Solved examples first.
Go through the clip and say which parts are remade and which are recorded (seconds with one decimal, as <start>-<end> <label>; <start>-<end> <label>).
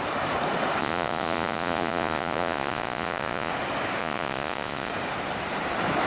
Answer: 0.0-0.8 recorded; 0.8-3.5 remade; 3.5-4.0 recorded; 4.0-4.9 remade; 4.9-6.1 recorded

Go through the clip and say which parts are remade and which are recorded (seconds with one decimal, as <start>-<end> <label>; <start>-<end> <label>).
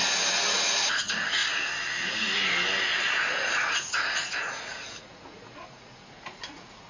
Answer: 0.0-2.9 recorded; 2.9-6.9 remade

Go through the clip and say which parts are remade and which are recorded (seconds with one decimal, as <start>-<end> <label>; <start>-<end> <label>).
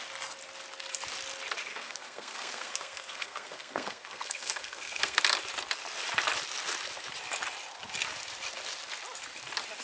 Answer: 0.0-1.7 recorded; 1.7-5.2 remade; 5.2-9.8 recorded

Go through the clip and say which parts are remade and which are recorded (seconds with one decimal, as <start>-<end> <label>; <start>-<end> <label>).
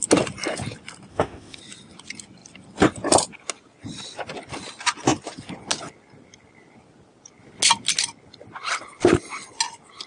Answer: 0.0-1.1 recorded; 1.1-1.6 remade; 1.6-10.1 recorded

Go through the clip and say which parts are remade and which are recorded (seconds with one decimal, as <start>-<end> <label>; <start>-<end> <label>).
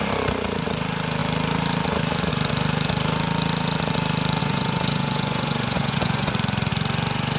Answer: 0.0-4.4 recorded; 4.4-6.3 remade; 6.3-7.4 recorded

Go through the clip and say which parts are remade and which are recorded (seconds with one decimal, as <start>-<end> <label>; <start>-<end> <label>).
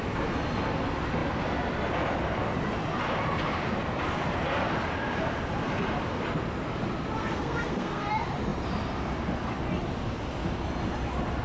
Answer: 0.0-7.2 recorded; 7.2-8.1 remade; 8.1-11.4 recorded